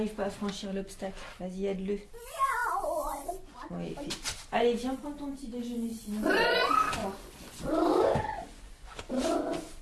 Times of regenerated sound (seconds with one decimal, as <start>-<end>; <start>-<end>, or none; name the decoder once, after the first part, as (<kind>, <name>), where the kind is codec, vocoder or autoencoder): 2.6-3.7 (vocoder, Vocos); 5.9-6.6; 7.0-9.0